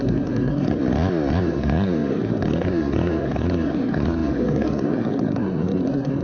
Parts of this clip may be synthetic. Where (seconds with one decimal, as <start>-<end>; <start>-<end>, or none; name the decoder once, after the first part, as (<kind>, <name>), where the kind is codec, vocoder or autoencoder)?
0.0-0.8 (codec, SNAC); 1.4-6.2